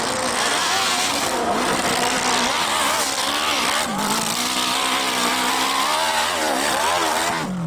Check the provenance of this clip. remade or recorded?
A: recorded